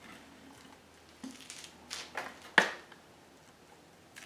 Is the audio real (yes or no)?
yes